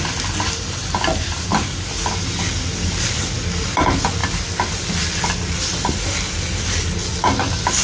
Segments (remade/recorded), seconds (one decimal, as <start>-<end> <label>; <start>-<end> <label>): 0.0-7.8 recorded